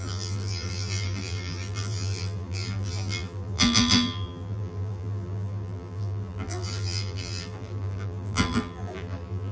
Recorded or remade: remade